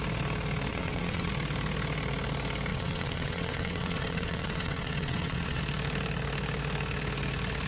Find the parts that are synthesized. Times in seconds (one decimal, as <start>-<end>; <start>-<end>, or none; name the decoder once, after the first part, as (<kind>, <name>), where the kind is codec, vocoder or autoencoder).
0.7-1.3 (vocoder, WaveNeXt); 2.7-5.6